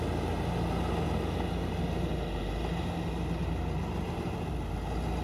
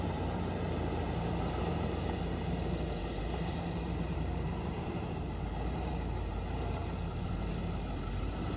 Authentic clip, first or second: first